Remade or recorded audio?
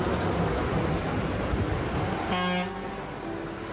recorded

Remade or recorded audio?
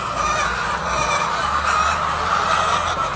recorded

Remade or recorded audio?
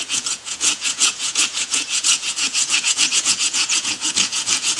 remade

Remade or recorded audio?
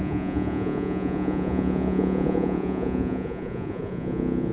remade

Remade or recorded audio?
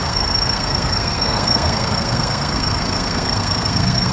remade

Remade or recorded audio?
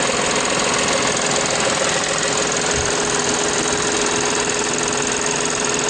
recorded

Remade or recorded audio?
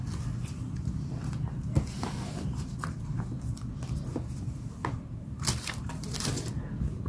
recorded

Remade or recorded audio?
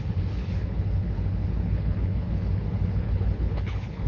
remade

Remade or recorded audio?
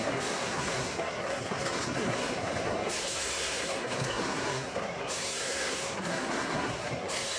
remade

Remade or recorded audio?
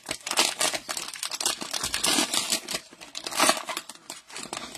remade